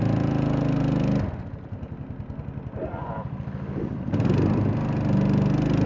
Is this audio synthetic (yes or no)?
no